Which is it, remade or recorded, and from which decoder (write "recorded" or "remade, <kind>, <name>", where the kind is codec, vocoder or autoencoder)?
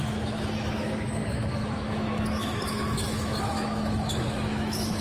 remade, autoencoder, DAC-VAE